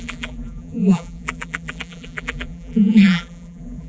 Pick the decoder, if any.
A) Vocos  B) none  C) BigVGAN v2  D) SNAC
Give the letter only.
C